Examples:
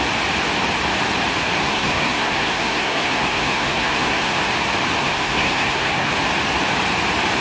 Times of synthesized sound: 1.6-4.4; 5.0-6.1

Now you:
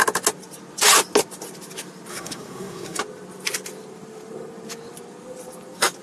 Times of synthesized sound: 2.1-3.0

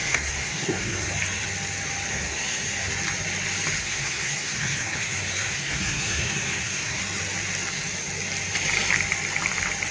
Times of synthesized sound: 0.0-1.1; 2.1-2.9; 3.8-7.0

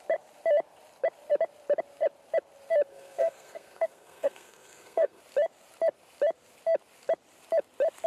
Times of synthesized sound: 2.9-5.2